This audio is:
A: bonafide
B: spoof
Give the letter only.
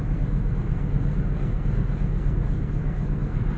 B